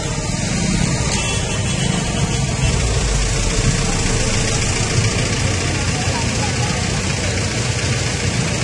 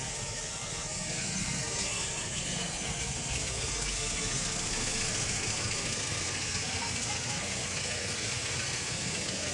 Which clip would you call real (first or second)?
first